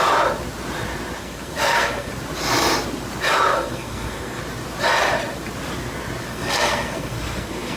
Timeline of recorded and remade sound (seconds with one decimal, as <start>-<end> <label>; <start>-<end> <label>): 0.0-1.2 recorded; 1.2-2.1 remade; 2.1-3.5 recorded; 3.5-4.4 remade; 4.4-6.3 recorded; 6.3-7.8 remade

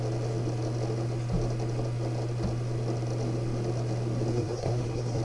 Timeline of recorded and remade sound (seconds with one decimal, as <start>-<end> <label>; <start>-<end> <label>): 0.0-4.3 recorded; 4.3-5.2 remade

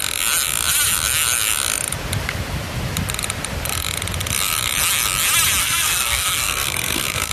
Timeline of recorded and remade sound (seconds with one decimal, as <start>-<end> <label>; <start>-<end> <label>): 0.0-5.6 recorded; 5.6-7.3 remade